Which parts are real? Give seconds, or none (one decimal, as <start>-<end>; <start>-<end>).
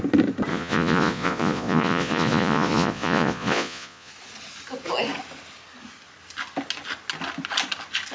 0.0-0.5; 4.1-8.1